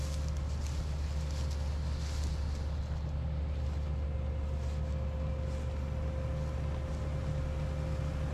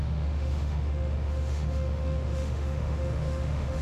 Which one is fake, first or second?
second